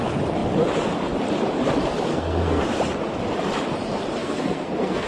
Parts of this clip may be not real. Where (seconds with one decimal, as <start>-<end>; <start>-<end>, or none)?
2.1-2.6; 4.2-5.1